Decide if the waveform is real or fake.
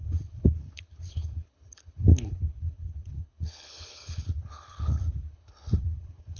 fake